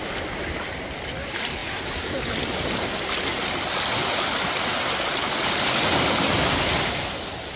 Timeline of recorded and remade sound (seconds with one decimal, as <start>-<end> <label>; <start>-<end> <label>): 0.0-7.6 recorded